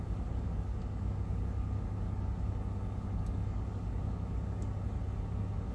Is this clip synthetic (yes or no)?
yes